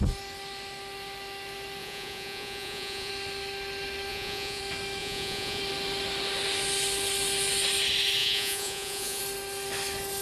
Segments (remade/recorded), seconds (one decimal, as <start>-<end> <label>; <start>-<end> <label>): 0.0-1.8 recorded; 1.8-3.1 remade; 3.1-4.1 recorded; 4.1-4.6 remade; 4.6-5.0 recorded; 5.0-5.6 remade; 5.6-8.2 recorded; 8.2-9.2 remade; 9.2-10.2 recorded